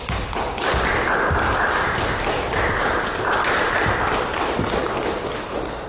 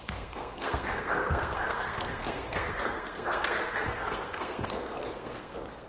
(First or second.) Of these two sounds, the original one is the first